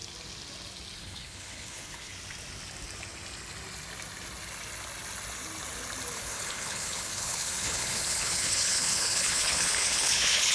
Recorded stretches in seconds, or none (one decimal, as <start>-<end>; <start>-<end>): 0.0-1.0; 2.1-6.2